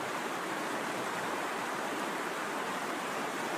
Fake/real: fake